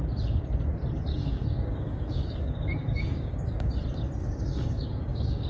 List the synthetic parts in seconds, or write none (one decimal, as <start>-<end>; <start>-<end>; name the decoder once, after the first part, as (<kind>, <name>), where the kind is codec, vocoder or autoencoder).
1.1-3.7 (codec, DAC); 4.2-5.5